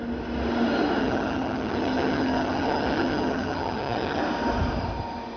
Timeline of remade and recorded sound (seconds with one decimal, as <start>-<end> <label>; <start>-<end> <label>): 0.0-1.0 recorded; 1.0-4.2 remade; 4.2-5.4 recorded